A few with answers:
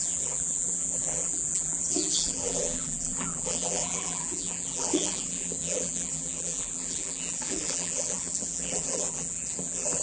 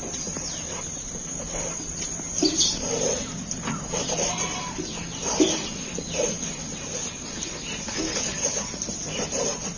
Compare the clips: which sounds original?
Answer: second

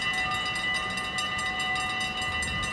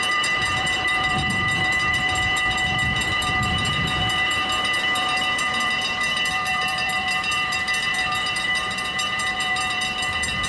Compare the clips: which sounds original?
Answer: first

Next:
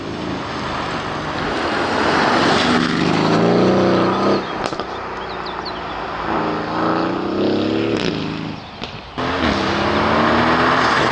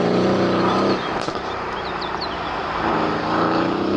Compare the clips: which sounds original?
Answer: first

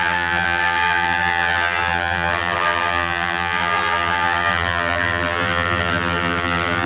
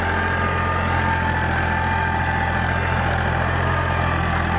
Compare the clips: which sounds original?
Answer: second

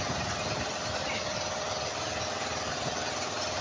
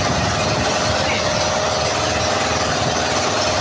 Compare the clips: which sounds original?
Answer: second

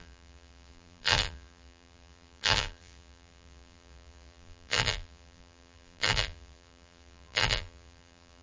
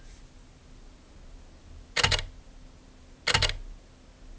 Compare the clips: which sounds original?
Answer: second